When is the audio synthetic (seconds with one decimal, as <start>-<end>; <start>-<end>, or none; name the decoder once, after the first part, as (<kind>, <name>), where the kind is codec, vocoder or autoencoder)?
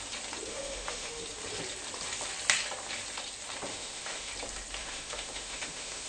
0.5-1.2 (autoencoder, DAC-VAE); 3.7-4.3; 4.8-6.1